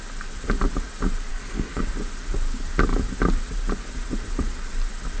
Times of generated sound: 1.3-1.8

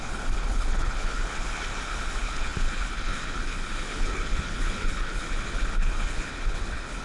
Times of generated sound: 0.0-7.0

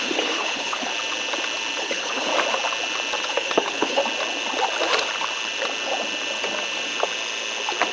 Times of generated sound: 0.0-0.9; 1.8-2.3; 3.2-4.0

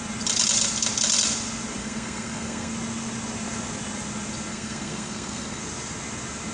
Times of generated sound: 1.8-2.7; 4.5-5.6

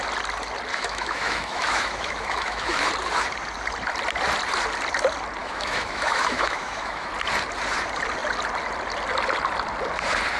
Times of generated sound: 0.7-2.9; 5.4-7.1

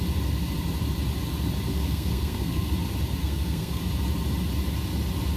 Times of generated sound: 1.7-2.7; 3.2-3.8

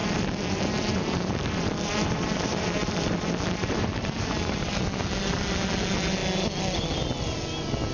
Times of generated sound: 0.0-4.7

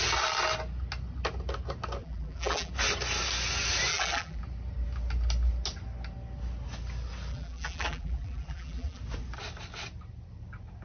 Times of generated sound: 2.0-2.7; 3.9-4.4; 7.3-9.0